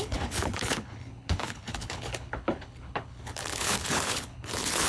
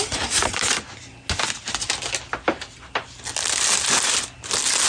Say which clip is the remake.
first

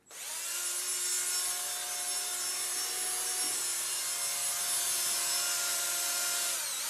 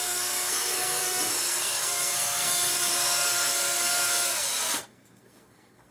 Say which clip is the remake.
second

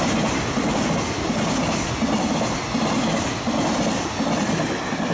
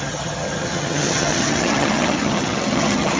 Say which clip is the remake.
second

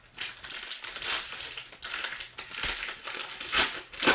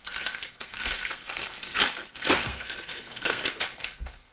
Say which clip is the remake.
second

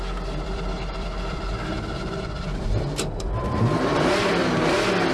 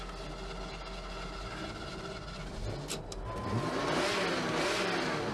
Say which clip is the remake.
first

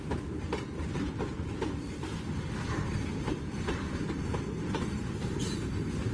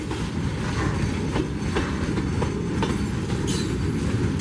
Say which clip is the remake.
first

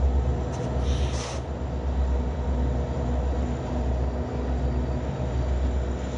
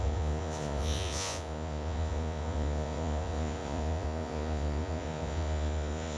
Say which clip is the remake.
second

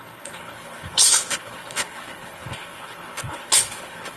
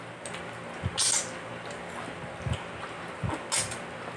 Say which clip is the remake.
first